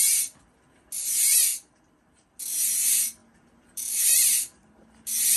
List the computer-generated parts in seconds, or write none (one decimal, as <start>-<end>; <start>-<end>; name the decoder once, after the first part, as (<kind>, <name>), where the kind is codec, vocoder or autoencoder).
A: none